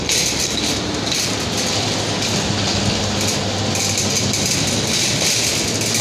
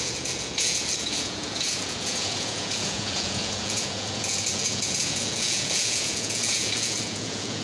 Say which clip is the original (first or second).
first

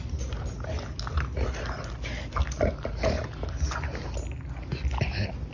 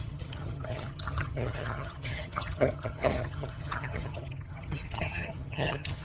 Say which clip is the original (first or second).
first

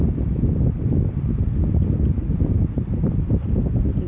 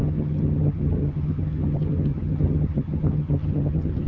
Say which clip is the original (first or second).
first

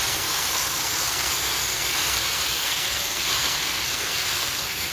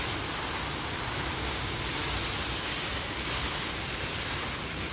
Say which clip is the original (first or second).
second